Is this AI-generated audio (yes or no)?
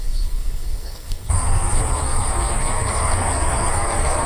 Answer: yes